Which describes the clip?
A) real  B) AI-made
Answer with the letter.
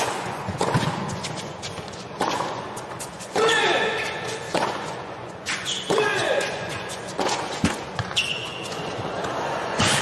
B